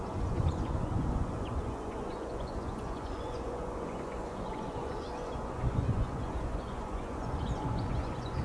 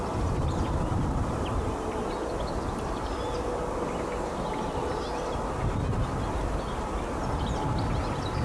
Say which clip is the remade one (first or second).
first